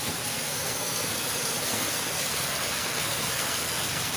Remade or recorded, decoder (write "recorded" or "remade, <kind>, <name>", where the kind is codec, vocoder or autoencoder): remade, codec, SNAC